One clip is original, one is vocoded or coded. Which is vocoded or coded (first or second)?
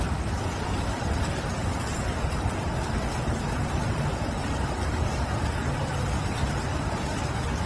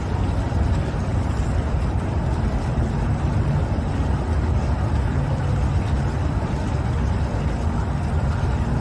first